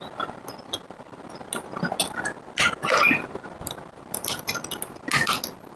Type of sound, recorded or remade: recorded